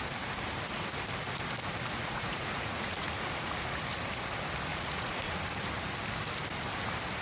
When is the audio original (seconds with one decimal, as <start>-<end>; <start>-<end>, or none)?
0.0-2.0; 3.8-4.7; 5.5-7.2